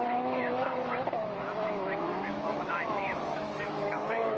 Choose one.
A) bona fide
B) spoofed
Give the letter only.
B